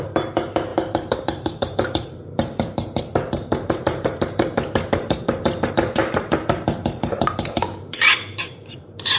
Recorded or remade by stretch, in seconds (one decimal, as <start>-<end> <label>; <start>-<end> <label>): 0.0-9.2 remade